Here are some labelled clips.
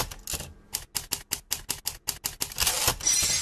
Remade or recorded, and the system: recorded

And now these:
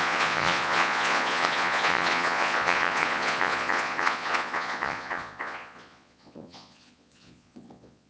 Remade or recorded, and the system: remade, vocoder, Vocos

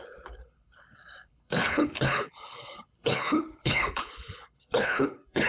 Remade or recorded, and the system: remade, codec, HILCodec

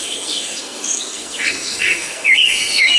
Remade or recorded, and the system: remade, codec, SNAC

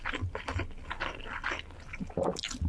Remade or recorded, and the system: recorded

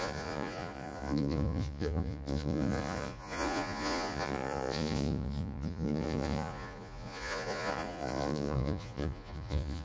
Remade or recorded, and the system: remade, vocoder, Vocos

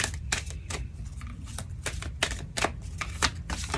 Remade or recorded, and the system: recorded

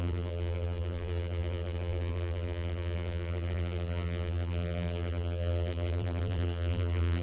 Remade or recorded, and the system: remade, vocoder, BigVGAN v2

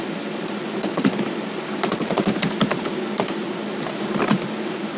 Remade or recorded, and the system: recorded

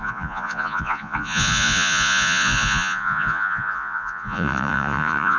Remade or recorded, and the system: remade, vocoder, Vocos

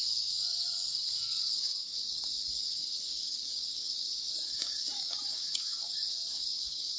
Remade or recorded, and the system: remade, codec, DAC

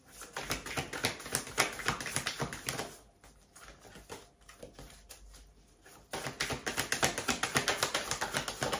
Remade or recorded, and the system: recorded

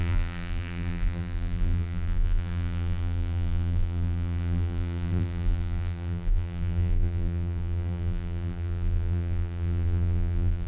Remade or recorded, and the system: remade, vocoder, BigVGAN v2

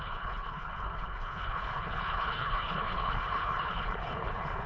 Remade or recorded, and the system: remade, codec, HILCodec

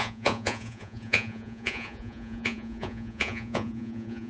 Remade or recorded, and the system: remade, vocoder, Vocos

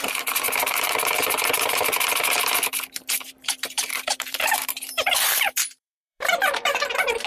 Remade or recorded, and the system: remade, vocoder, BigVGAN v2